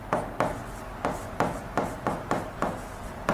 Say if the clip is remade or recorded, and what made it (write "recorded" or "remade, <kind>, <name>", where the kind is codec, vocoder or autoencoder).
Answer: recorded